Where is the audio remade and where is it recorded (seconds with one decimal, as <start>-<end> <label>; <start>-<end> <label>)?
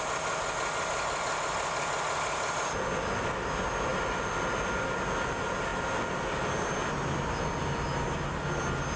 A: 0.0-9.0 recorded